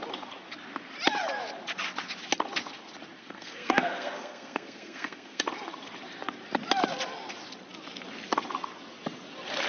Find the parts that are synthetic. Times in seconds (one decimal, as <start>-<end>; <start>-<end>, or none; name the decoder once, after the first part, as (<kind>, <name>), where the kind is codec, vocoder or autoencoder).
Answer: 3.2-5.4 (codec, SNAC)